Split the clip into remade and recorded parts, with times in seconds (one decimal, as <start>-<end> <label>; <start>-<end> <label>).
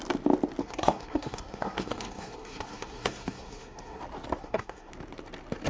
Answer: 0.0-0.6 recorded; 0.6-4.0 remade; 4.0-4.4 recorded; 4.4-4.9 remade; 4.9-5.7 recorded